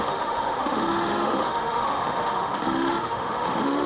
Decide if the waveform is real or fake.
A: fake